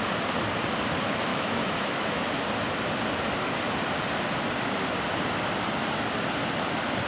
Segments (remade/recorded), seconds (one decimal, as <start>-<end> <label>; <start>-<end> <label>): 0.0-1.3 recorded; 1.3-2.3 remade; 2.3-7.1 recorded